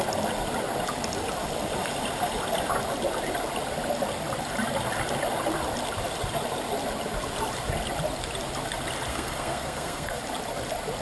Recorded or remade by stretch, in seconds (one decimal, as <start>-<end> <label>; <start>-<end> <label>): 0.0-9.1 recorded; 9.1-10.2 remade; 10.2-11.0 recorded